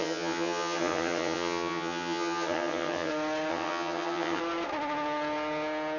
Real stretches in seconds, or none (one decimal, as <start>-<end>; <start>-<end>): 3.1-3.5; 4.4-6.0